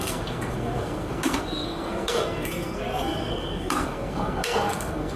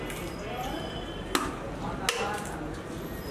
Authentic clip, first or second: second